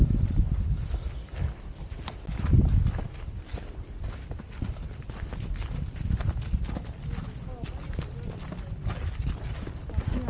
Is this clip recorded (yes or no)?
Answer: yes